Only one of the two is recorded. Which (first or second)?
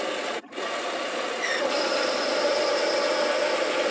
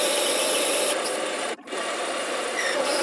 first